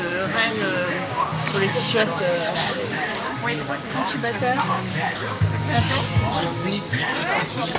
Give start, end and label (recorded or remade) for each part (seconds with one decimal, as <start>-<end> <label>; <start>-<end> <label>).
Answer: 0.0-7.2 remade; 7.2-7.8 recorded